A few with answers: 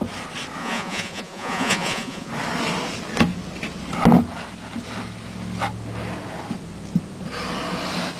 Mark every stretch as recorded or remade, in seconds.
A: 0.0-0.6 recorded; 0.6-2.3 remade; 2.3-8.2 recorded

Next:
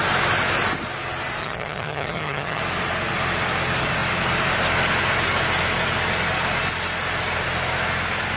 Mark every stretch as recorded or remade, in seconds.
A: 0.0-1.4 recorded; 1.4-2.6 remade; 2.6-8.4 recorded

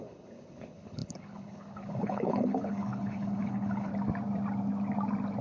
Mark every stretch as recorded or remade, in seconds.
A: 0.0-3.9 remade; 3.9-5.4 recorded

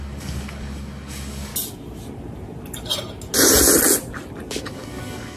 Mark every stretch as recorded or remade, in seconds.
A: 0.0-1.5 remade; 1.5-4.7 recorded; 4.7-5.4 remade

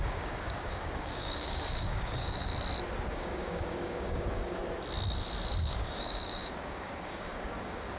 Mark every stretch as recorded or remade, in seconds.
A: 0.0-2.5 remade; 2.5-3.1 recorded; 3.1-4.6 remade; 4.6-5.6 recorded; 5.6-8.0 remade

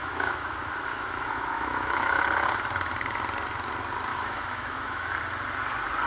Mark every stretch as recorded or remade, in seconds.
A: 0.0-0.5 remade; 0.5-0.9 recorded; 0.9-2.2 remade; 2.2-4.1 recorded; 4.1-5.2 remade; 5.2-6.1 recorded

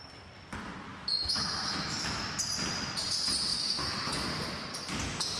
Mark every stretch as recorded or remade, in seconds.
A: 0.0-0.9 recorded; 0.9-2.2 remade; 2.2-3.5 recorded; 3.5-4.2 remade; 4.2-5.4 recorded